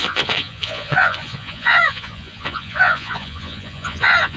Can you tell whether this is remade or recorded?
remade